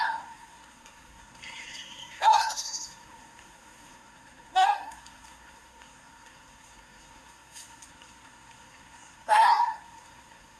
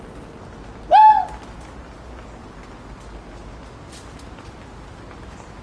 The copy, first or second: first